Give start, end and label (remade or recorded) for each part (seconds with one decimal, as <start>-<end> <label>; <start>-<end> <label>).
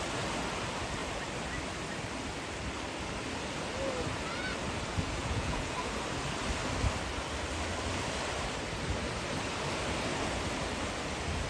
0.0-5.2 recorded; 5.2-5.7 remade; 5.7-11.5 recorded